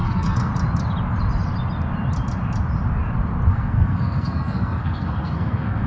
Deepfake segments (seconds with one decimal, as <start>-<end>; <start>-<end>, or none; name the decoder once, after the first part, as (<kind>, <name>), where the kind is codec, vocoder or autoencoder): 0.0-0.5 (codec, SNAC); 3.5-5.9